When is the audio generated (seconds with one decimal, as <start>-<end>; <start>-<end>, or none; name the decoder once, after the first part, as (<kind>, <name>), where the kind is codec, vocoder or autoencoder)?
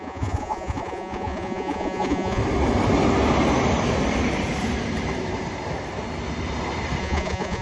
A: 0.0-2.4 (vocoder, Vocos); 7.0-7.6